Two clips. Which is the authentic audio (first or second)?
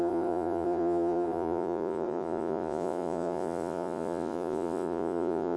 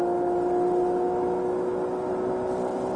second